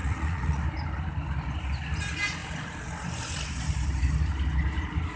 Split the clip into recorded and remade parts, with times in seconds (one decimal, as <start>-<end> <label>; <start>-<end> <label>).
0.0-0.6 remade; 0.6-5.2 recorded